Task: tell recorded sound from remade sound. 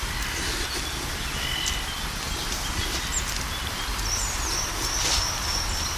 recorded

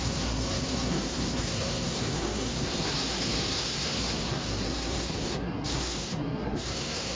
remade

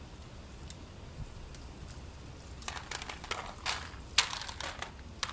recorded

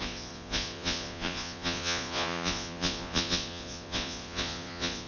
remade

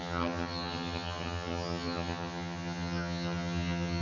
remade